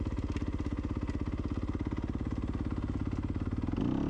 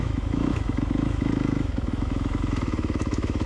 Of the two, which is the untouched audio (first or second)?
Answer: first